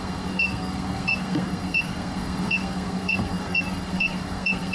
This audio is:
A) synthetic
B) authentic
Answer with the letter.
A